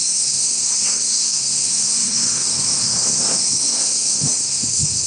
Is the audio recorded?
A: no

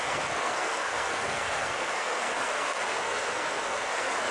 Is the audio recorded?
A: no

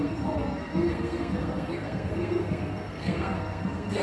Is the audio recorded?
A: no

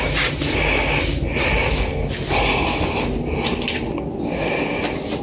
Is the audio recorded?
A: yes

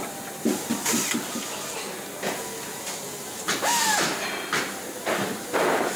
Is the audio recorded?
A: yes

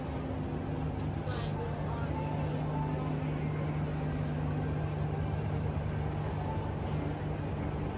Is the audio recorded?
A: yes